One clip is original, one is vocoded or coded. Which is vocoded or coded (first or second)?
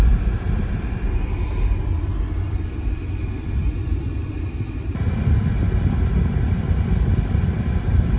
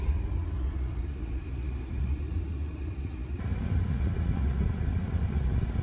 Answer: second